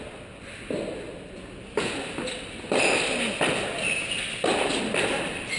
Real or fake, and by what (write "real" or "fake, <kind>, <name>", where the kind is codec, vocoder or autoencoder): real